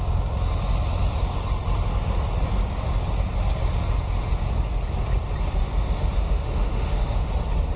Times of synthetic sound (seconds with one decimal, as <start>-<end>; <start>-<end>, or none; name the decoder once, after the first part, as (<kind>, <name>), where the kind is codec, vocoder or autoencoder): 5.6-7.3 (autoencoder, DAC-VAE)